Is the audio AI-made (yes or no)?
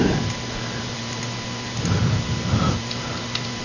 no